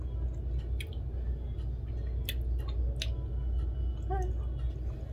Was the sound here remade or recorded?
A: recorded